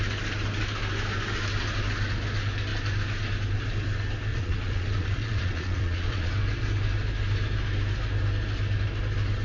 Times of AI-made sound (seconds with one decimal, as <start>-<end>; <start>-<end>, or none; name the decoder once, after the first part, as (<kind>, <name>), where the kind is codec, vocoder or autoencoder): 4.3-6.3 (vocoder, Vocos)